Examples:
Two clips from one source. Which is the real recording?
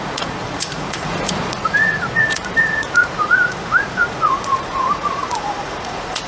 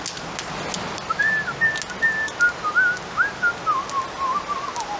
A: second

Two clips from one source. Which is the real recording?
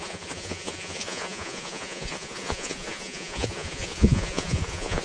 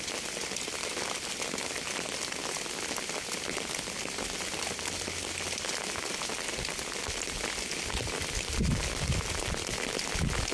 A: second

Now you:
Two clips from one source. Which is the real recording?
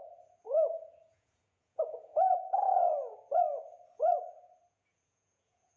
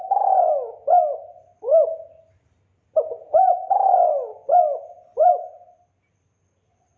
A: second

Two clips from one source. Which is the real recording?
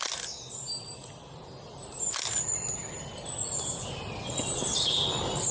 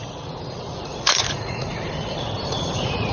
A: first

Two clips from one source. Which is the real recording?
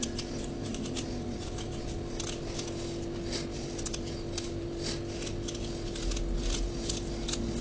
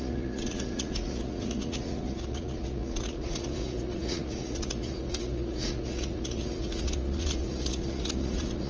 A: first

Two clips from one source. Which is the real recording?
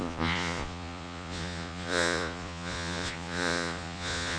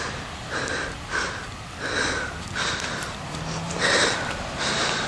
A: second